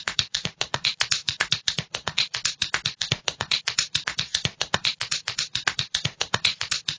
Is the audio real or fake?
fake